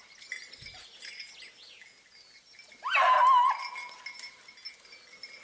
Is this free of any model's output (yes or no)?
yes